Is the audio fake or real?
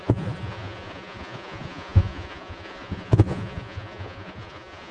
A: fake